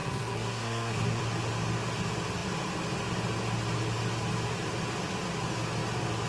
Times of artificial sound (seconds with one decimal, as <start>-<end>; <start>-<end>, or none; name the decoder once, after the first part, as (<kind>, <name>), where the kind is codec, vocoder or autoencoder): 0.0-1.2 (codec, SNAC)